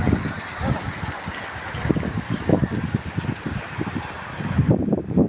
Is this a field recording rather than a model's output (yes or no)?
yes